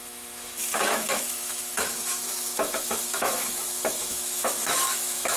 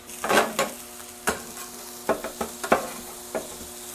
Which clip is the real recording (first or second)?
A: second